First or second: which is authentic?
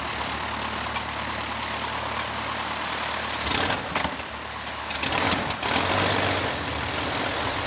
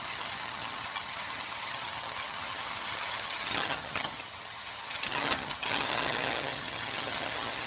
first